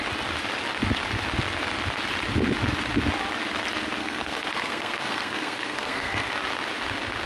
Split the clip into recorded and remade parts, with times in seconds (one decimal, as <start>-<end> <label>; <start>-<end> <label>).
0.0-4.0 recorded; 4.0-6.3 remade; 6.3-7.3 recorded